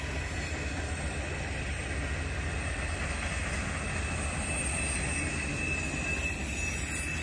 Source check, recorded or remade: recorded